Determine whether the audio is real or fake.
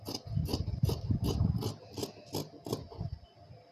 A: real